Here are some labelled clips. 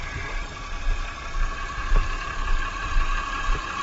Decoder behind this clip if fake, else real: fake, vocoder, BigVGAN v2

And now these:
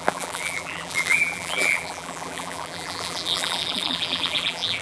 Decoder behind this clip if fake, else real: fake, vocoder, BigVGAN v2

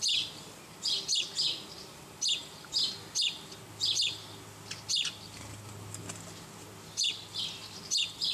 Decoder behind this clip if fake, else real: real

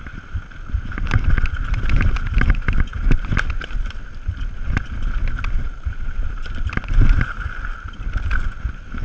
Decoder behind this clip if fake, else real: fake, vocoder, BigVGAN v2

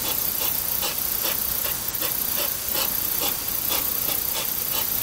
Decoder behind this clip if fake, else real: fake, vocoder, BigVGAN v2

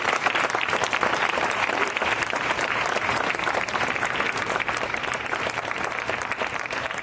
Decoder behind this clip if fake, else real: fake, vocoder, BigVGAN v2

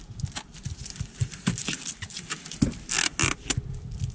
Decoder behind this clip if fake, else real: real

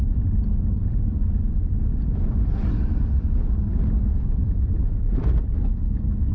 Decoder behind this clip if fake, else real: fake, vocoder, BigVGAN v2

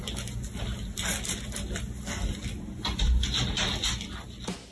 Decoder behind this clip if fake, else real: real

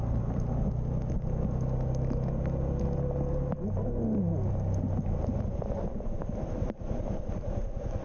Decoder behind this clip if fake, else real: real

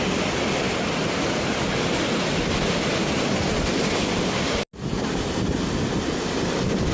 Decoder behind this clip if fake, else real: real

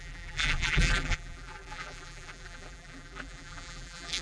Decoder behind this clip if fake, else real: fake, vocoder, BigVGAN v2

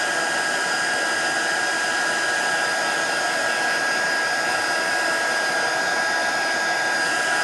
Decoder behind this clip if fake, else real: real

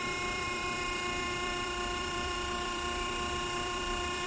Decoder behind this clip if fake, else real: fake, vocoder, BigVGAN v2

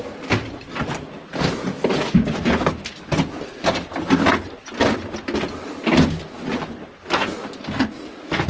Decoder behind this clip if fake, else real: real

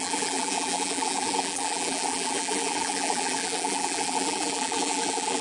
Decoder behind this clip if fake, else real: fake, vocoder, BigVGAN v2